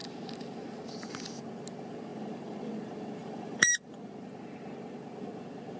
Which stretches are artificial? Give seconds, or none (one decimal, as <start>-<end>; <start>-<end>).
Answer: 2.1-2.6; 3.2-3.9

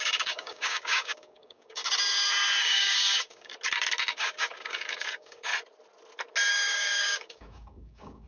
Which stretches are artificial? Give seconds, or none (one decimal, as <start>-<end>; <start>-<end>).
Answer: 0.0-1.8; 2.6-3.5; 4.1-5.5; 6.5-8.3

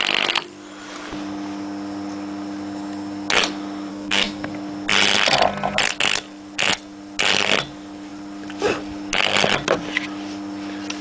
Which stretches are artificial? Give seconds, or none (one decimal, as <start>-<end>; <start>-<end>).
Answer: 3.9-4.5

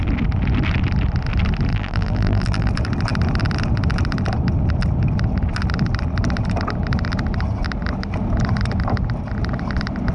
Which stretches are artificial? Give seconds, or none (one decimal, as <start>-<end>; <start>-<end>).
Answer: 1.7-2.7